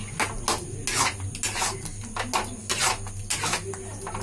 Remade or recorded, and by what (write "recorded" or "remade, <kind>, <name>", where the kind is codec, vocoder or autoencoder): recorded